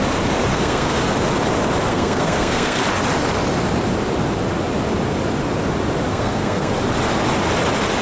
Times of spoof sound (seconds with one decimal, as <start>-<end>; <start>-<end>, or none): 0.5-1.0; 1.9-2.8; 6.1-6.7